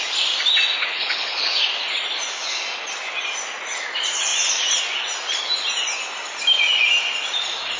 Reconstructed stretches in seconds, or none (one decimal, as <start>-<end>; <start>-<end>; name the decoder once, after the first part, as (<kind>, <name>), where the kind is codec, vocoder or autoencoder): 0.8-1.6 (codec, HILCodec)